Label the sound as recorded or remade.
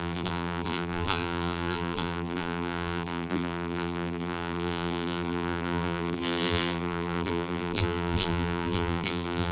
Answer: remade